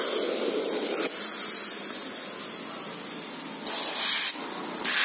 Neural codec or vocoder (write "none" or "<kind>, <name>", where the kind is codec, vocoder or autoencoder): none